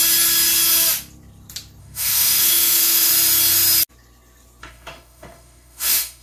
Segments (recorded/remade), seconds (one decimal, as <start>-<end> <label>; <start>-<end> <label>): 0.0-1.8 recorded; 1.8-3.1 remade; 3.1-4.6 recorded; 4.6-6.2 remade